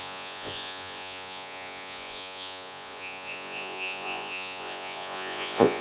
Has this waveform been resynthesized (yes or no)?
yes